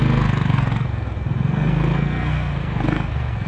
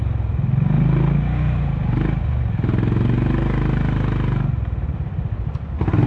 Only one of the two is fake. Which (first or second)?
first